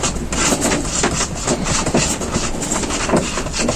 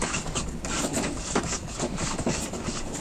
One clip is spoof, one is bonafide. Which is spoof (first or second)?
second